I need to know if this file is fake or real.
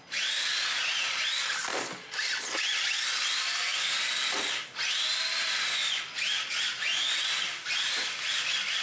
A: real